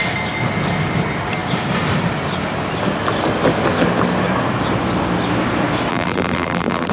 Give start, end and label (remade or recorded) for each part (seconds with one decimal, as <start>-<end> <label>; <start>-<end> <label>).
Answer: 0.0-5.9 recorded; 5.9-6.9 remade

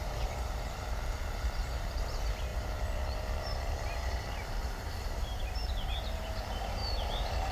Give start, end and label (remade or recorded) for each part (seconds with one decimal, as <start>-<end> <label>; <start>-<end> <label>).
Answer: 0.0-6.8 remade; 6.8-7.5 recorded

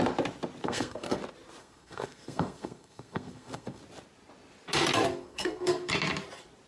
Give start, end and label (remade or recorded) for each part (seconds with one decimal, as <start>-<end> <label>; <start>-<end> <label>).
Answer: 0.0-0.6 recorded; 0.6-1.2 remade; 1.2-1.6 recorded; 1.6-3.8 remade; 3.8-5.1 recorded; 5.1-5.9 remade; 5.9-6.7 recorded

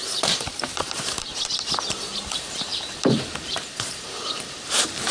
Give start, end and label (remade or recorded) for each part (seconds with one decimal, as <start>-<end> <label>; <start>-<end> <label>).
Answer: 0.0-1.3 remade; 1.3-2.3 recorded; 2.3-5.1 remade

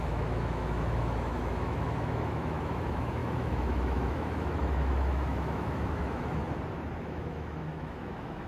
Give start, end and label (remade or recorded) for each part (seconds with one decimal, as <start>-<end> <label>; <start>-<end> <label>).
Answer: 0.0-6.4 remade; 6.4-7.0 recorded; 7.0-8.5 remade

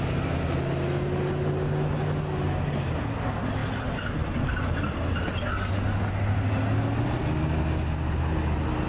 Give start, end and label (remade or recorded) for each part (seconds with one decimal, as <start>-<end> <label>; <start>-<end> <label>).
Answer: 0.0-8.9 recorded